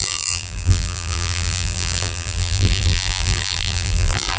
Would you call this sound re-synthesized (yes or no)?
yes